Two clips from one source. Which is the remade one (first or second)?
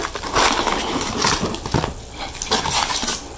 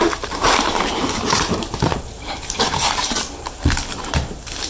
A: second